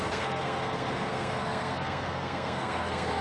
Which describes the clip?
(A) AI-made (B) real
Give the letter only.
A